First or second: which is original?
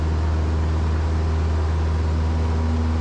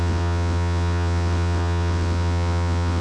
first